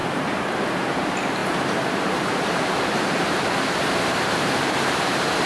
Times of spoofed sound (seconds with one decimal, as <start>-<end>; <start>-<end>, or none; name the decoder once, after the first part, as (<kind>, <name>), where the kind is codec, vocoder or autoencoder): 0.0-5.5 (vocoder, BigVGAN v2)